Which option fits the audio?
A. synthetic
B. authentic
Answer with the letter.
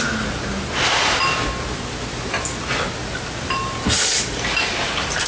B